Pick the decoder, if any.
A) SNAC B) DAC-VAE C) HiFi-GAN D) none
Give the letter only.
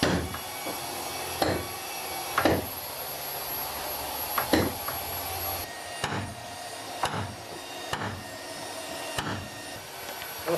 D